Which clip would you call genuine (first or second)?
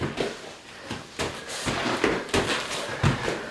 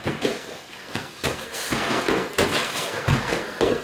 first